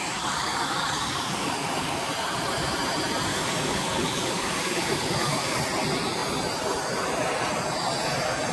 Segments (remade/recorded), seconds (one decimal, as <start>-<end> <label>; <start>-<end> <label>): 0.0-2.1 remade; 2.1-3.3 recorded; 3.3-5.6 remade; 5.6-8.5 recorded